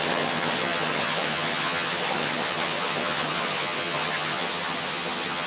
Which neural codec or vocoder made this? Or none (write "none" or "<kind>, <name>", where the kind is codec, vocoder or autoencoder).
vocoder, HiFi-GAN